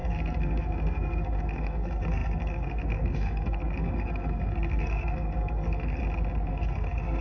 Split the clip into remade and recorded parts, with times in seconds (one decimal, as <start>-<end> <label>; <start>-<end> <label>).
0.0-6.0 remade; 6.0-6.5 recorded; 6.5-7.2 remade